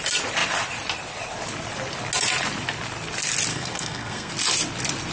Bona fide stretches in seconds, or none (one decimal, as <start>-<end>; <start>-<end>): 0.0-3.5; 4.3-5.1